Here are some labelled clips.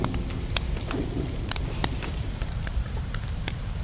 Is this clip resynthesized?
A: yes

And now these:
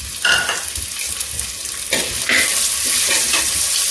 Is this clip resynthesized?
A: no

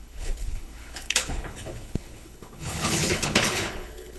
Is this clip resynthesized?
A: yes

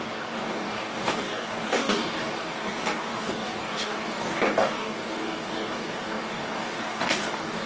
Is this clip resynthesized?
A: yes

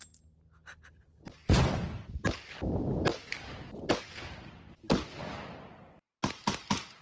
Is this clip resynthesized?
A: no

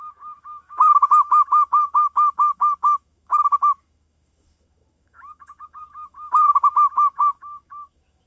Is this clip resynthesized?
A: yes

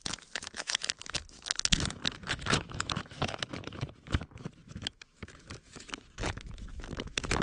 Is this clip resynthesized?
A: yes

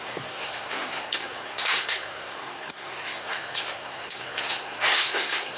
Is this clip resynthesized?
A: yes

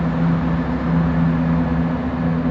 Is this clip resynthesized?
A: no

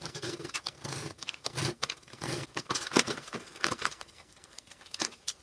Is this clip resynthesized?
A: yes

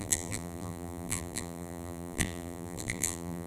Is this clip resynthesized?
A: yes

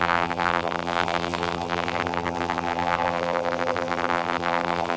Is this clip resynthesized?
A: yes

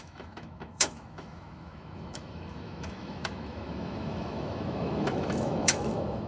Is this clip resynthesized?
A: yes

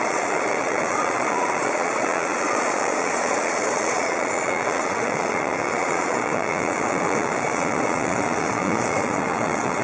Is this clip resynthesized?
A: yes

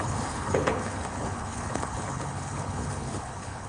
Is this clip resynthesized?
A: yes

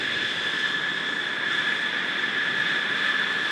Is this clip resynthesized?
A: yes